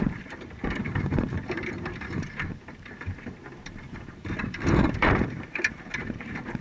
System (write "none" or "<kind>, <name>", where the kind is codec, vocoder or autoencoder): vocoder, BigVGAN v2